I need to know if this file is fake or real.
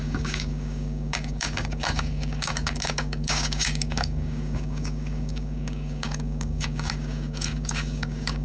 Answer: fake